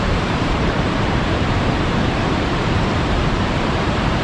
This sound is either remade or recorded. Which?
remade